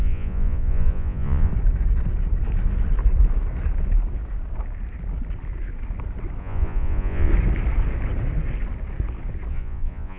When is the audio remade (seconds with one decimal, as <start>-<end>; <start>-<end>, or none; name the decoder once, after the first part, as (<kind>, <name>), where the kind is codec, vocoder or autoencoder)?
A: 0.0-1.5 (vocoder, Vocos); 6.4-7.3; 9.5-10.2